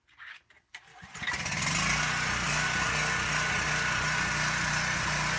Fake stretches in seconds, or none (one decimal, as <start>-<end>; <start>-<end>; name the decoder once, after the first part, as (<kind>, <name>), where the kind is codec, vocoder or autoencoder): none